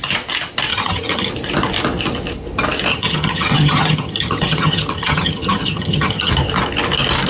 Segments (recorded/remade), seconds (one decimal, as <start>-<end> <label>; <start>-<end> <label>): 0.0-0.7 recorded; 0.7-1.3 remade; 1.3-2.9 recorded; 2.9-6.3 remade; 6.3-7.3 recorded